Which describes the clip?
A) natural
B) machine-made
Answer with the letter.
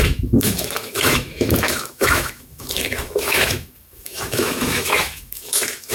B